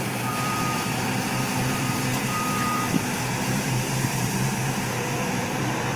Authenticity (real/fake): fake